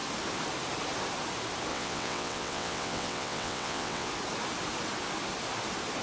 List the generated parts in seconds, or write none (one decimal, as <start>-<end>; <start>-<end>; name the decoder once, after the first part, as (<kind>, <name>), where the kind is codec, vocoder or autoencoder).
1.7-4.1 (vocoder, WaveNeXt)